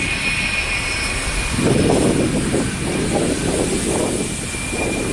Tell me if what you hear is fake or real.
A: real